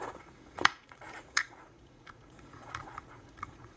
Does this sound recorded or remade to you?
remade